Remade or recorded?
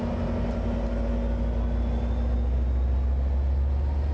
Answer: recorded